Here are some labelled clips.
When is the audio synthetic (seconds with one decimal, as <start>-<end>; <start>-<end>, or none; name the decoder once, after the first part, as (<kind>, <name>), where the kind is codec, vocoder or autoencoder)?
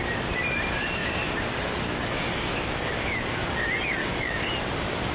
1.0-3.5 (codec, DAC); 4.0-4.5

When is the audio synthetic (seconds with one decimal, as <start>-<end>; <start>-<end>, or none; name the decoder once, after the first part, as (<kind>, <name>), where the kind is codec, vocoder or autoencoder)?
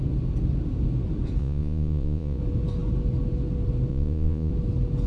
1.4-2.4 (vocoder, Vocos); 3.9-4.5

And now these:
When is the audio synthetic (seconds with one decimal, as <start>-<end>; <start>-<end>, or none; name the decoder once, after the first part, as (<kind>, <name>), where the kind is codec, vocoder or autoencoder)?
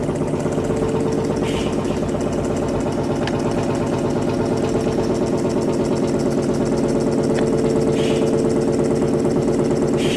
none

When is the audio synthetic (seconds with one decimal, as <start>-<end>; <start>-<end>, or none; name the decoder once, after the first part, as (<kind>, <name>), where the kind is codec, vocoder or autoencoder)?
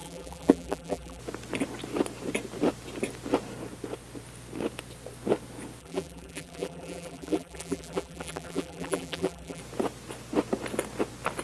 0.0-1.2 (vocoder, BigVGAN v2); 5.8-9.6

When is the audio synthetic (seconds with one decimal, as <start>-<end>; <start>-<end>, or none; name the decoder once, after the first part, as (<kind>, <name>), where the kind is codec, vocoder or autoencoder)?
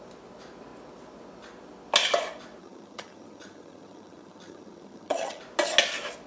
2.6-5.4 (vocoder, HiFi-GAN)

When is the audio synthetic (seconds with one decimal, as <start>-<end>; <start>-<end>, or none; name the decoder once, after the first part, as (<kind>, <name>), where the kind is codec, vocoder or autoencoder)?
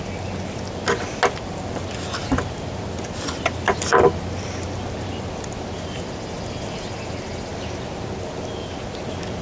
none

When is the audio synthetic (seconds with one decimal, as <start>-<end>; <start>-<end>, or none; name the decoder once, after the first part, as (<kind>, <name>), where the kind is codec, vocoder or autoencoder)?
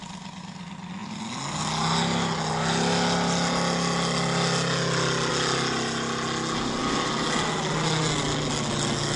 none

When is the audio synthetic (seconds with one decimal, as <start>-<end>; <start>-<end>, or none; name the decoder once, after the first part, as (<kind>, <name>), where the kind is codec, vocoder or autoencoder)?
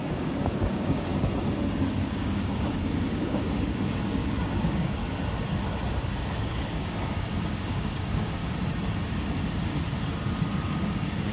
0.0-1.1 (codec, DAC); 2.1-5.0; 6.3-8.4; 10.6-11.3